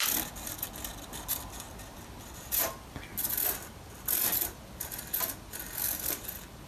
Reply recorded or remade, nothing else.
recorded